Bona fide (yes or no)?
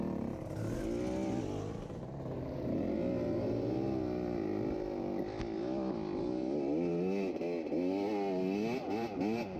yes